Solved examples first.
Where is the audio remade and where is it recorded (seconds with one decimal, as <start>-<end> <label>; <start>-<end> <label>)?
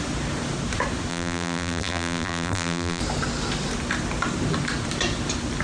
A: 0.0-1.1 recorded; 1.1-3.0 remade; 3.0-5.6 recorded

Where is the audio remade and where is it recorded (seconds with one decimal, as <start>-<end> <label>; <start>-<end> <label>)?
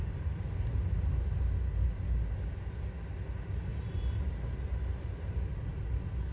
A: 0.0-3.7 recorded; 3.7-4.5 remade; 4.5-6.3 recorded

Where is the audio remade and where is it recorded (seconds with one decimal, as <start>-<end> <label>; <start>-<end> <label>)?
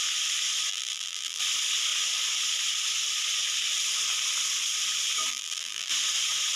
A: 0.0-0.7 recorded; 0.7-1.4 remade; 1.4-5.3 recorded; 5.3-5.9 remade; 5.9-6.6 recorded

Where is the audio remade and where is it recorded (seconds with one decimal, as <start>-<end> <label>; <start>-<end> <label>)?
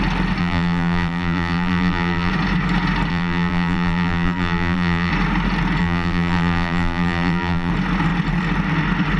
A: 0.0-0.4 recorded; 0.4-2.3 remade; 2.3-3.1 recorded; 3.1-5.1 remade; 5.1-5.8 recorded; 5.8-7.7 remade; 7.7-9.2 recorded